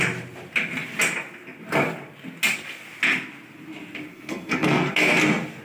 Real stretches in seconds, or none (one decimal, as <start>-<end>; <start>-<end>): 0.0-4.1; 4.9-5.6